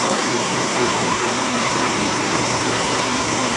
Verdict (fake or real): fake